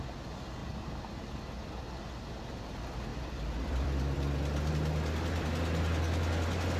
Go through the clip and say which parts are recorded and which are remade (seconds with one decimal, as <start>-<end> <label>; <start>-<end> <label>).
0.0-0.6 recorded; 0.6-1.9 remade; 1.9-3.1 recorded; 3.1-4.7 remade; 4.7-6.8 recorded